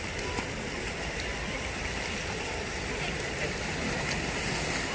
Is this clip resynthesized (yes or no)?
no